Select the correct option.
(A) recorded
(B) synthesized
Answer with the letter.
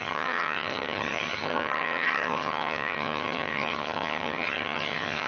B